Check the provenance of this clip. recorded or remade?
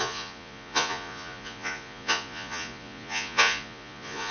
remade